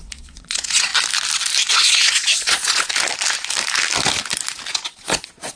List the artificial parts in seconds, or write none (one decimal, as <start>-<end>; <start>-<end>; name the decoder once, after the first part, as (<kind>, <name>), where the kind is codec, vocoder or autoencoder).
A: 0.0-0.9 (vocoder, Vocos); 1.7-2.9; 4.7-5.6